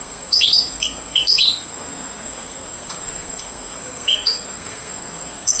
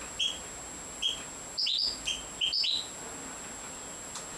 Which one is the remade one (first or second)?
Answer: first